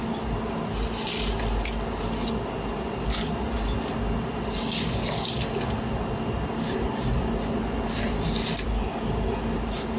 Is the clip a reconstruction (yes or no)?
no